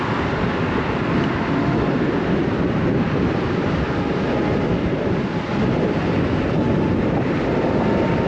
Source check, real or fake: real